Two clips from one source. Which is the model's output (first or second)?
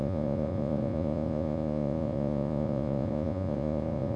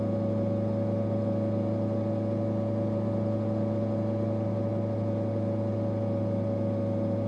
first